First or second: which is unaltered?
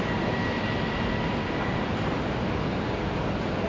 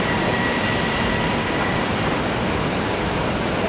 first